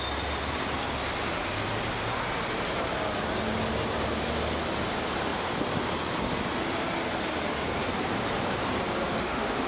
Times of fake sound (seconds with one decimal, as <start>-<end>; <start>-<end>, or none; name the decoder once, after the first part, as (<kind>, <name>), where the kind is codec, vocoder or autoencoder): 9.1-9.7 (autoencoder, DAC-VAE)